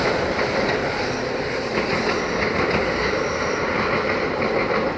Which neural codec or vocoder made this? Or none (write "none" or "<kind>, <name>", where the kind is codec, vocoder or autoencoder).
none